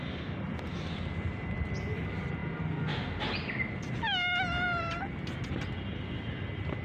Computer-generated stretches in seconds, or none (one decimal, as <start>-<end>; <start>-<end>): none